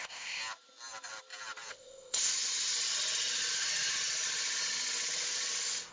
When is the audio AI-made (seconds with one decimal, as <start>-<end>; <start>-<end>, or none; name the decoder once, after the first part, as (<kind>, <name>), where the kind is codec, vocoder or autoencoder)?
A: 0.0-0.4 (codec, ZipCodec); 1.7-2.3